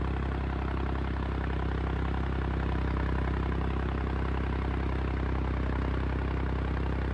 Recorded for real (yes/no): yes